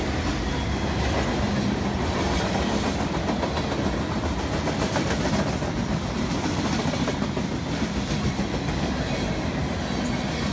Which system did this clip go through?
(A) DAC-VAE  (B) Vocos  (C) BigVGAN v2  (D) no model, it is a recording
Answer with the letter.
D